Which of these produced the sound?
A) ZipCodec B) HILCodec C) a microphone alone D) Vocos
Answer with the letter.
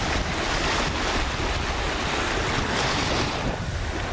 C